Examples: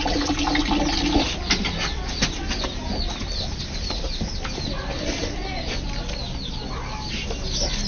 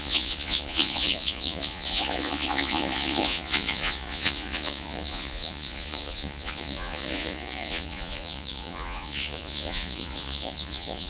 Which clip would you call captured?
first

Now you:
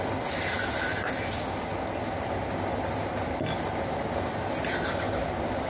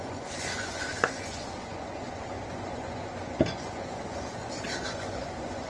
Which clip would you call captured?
first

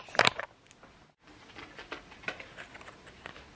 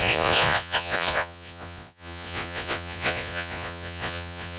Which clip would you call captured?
first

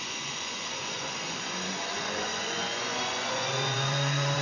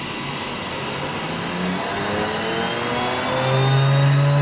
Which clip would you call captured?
second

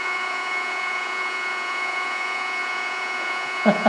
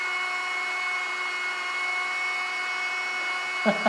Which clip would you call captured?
second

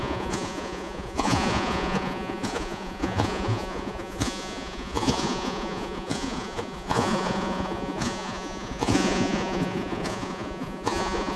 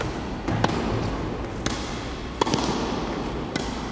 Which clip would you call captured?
second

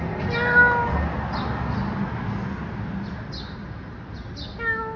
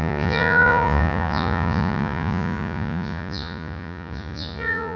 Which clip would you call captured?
first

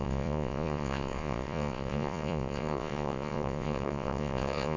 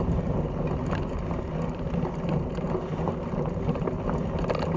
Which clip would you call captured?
second